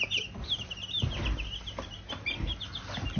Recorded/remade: recorded